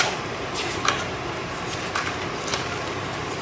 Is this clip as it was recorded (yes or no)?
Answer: no